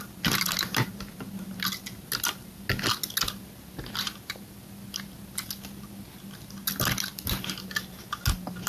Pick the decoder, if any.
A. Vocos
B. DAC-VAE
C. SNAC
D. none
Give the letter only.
D